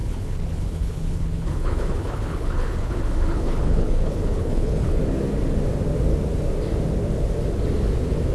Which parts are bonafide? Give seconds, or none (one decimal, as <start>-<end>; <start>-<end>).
5.0-8.3